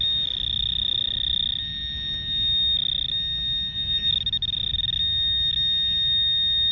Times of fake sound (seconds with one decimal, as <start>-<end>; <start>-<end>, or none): none